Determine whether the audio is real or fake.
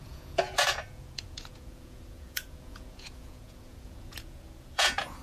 fake